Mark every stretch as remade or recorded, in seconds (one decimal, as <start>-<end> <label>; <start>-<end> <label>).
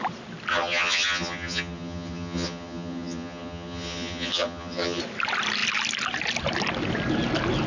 0.0-0.5 recorded; 0.5-5.0 remade; 5.0-7.7 recorded